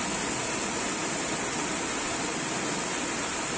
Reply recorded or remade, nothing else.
recorded